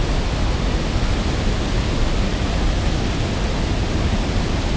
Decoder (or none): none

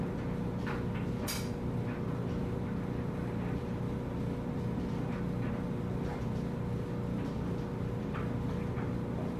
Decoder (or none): none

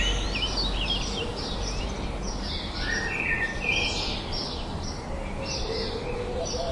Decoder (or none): none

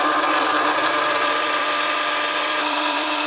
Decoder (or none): vocoder, BigVGAN v2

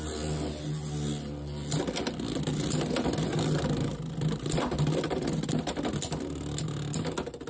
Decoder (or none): none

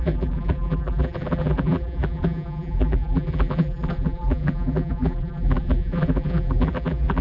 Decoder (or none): vocoder, BigVGAN v2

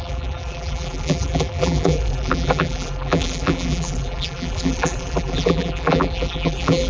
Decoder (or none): vocoder, BigVGAN v2